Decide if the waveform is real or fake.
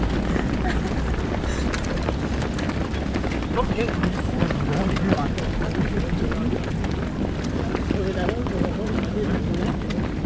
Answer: real